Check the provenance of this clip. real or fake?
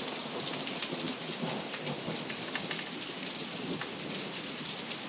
real